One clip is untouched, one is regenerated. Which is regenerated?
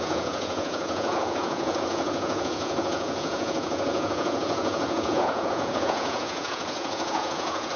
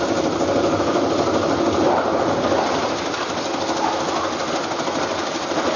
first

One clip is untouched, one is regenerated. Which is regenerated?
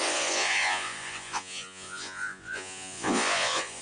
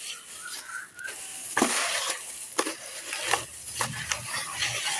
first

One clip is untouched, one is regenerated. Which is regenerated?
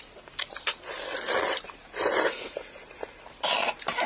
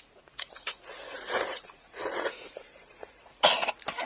second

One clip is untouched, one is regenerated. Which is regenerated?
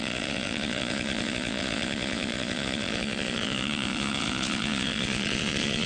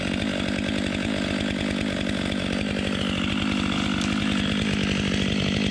first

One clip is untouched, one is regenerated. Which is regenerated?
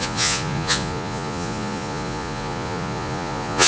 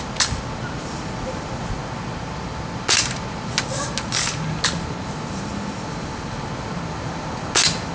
first